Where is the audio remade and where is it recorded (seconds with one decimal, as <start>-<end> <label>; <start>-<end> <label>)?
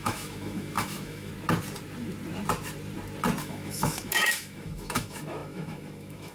0.0-1.3 remade; 1.3-3.4 recorded; 3.4-6.3 remade